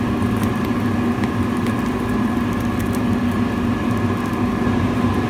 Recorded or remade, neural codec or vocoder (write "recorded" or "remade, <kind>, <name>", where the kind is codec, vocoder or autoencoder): recorded